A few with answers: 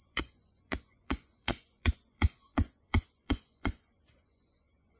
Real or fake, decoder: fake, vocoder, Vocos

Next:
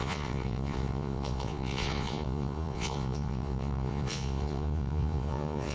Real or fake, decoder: fake, vocoder, Vocos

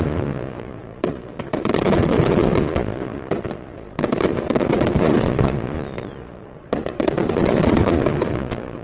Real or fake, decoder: fake, vocoder, Vocos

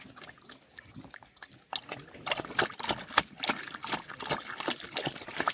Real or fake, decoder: real